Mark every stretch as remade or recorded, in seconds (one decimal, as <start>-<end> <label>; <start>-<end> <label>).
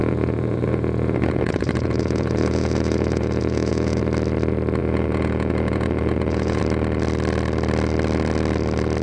0.0-4.0 remade; 4.0-4.8 recorded; 4.8-6.6 remade; 6.6-9.0 recorded